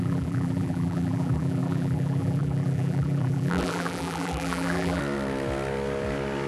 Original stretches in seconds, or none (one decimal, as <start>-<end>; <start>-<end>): 5.0-6.5